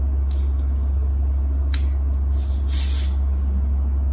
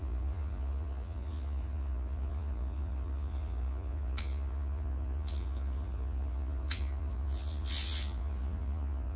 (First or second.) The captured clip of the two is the first